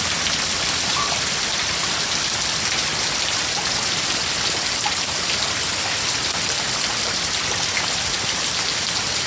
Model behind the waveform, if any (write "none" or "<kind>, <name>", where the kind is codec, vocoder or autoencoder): none